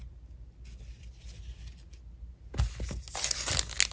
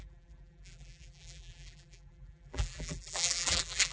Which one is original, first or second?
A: first